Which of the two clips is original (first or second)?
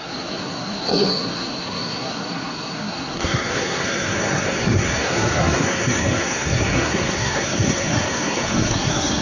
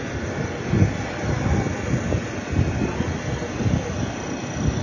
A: second